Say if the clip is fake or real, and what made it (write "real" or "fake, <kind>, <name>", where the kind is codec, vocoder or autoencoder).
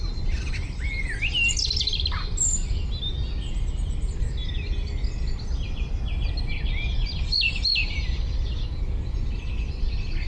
real